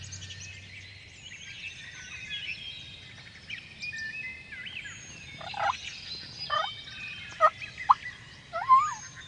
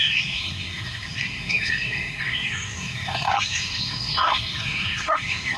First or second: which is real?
first